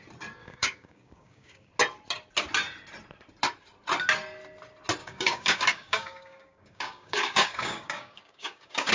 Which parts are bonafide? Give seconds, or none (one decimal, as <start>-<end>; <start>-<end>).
0.0-0.4; 1.7-5.0